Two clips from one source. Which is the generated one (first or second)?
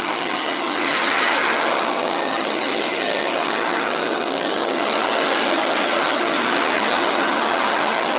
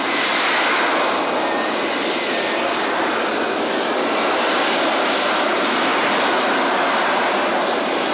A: first